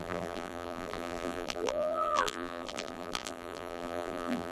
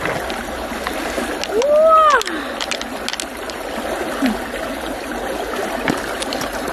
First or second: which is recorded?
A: second